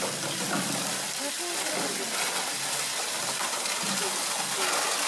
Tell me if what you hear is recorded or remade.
recorded